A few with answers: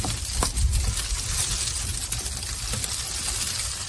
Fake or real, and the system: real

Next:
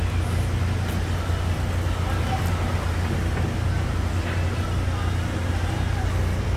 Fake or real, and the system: real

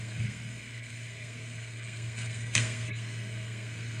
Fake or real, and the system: fake, codec, SNAC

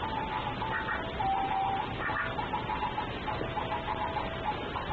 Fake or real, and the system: real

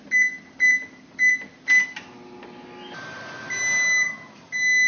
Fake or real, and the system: real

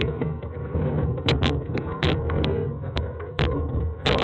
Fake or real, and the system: fake, codec, SNAC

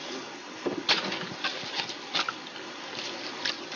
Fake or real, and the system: real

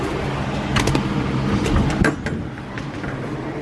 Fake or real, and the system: real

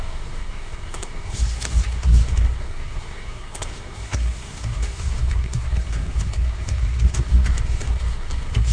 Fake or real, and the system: fake, codec, SNAC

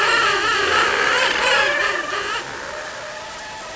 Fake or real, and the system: real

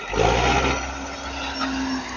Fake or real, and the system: real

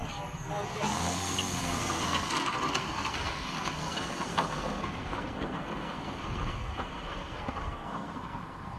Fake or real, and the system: fake, codec, SNAC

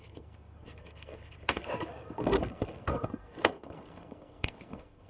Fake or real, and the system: fake, codec, SNAC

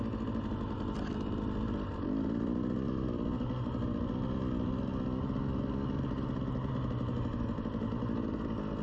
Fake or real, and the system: real